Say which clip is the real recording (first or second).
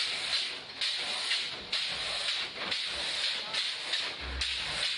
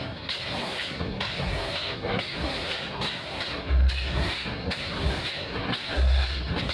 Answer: first